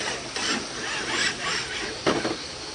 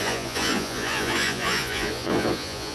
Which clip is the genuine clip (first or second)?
first